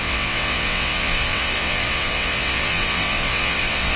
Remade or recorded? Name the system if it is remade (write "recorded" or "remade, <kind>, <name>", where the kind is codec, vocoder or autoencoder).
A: remade, vocoder, WaveNeXt